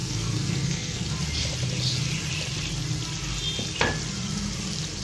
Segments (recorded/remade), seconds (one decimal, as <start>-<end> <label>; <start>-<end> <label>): 0.0-1.1 remade; 1.1-5.0 recorded